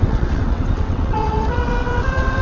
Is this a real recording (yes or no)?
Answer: no